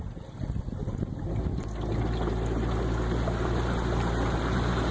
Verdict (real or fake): real